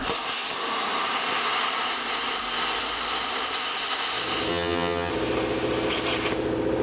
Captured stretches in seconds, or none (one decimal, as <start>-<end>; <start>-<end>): 0.0-4.5; 5.1-6.8